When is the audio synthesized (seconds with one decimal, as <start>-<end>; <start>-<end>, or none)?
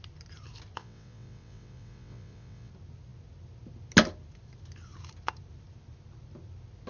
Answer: 0.8-2.7